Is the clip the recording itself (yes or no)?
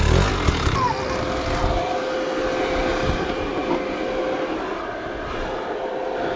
yes